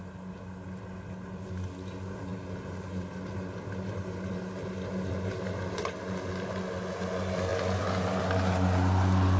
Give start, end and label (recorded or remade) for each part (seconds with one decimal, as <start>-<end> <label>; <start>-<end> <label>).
0.0-9.4 recorded